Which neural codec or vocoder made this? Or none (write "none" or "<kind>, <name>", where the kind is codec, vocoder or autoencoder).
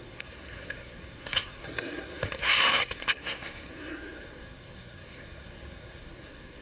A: codec, SNAC